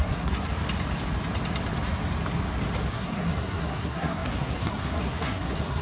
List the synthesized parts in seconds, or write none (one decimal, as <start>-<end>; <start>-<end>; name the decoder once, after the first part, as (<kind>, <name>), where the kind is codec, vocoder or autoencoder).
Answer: 0.0-0.5 (codec, SNAC); 2.9-5.8